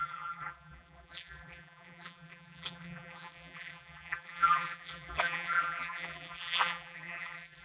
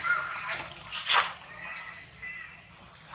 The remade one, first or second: first